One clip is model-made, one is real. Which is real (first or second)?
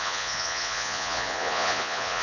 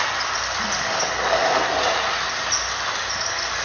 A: second